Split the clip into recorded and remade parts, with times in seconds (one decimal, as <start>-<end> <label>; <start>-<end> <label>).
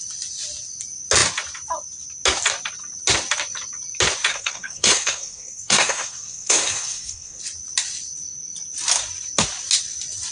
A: 0.0-4.3 recorded; 4.3-7.4 remade; 7.4-10.3 recorded